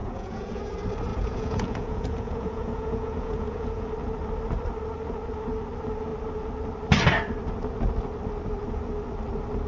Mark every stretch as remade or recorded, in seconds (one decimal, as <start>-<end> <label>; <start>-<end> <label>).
0.0-0.6 remade; 0.6-1.1 recorded; 1.1-3.9 remade; 3.9-9.7 recorded

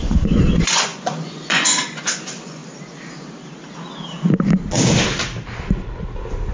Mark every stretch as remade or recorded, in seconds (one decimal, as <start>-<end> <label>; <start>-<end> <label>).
0.0-2.6 remade; 2.6-6.5 recorded